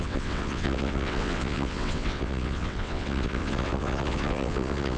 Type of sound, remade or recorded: remade